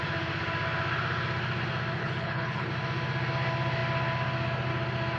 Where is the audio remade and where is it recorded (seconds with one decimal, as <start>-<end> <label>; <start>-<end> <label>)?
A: 0.0-2.0 recorded; 2.0-2.7 remade; 2.7-5.2 recorded